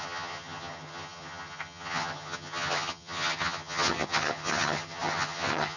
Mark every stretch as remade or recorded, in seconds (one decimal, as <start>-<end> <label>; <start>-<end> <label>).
0.0-5.8 remade